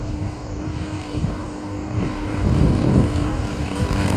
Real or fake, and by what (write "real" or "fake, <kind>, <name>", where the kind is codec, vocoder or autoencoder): fake, codec, DAC